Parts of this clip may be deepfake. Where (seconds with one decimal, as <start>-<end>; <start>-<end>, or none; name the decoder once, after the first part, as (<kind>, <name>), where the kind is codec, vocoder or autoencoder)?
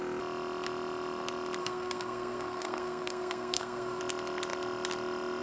1.6-4.0 (codec, SNAC)